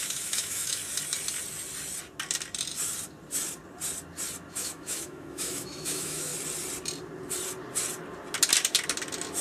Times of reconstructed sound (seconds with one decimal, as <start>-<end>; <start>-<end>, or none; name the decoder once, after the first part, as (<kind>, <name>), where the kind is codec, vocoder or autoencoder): 0.0-0.8 (autoencoder, DAC-VAE); 4.5-6.3